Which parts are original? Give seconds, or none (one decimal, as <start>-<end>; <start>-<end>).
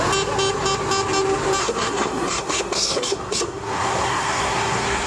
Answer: 0.0-1.6